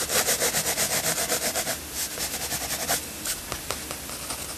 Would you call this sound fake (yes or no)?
no